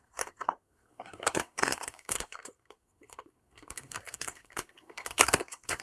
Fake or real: fake